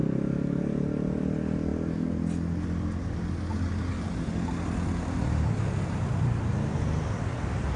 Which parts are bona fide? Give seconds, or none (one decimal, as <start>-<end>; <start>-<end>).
0.0-7.8

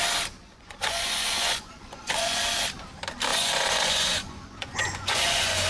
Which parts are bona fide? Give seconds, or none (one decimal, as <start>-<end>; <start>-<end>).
0.0-0.4; 2.4-3.3

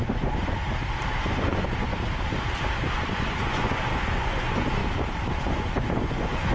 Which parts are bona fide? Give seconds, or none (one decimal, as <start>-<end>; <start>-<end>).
0.6-1.2; 1.9-2.9; 4.8-5.4

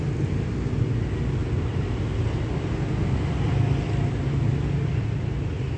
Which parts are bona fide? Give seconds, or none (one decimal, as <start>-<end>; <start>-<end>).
0.0-5.8

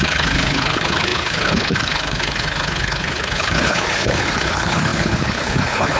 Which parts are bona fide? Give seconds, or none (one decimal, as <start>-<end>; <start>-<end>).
none

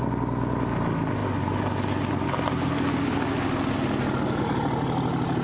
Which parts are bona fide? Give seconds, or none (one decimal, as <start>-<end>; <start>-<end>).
0.0-5.4